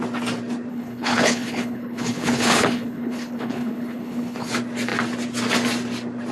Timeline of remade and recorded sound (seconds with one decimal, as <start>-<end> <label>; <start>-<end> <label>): 0.0-0.7 recorded; 0.7-4.5 remade; 4.5-6.3 recorded